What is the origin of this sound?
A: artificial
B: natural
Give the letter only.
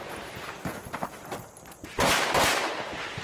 B